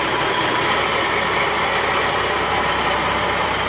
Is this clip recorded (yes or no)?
yes